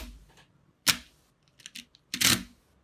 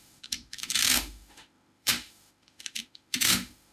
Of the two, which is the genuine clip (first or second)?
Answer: first